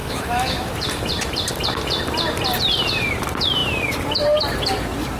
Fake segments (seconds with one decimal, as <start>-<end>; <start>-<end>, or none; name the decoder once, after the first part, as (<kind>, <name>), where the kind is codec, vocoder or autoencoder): 0.0-0.7 (autoencoder, DAC-VAE)